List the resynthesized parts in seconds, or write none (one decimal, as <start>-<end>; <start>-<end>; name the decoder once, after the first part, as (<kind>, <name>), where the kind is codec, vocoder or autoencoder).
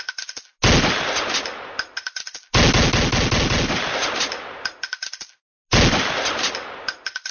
none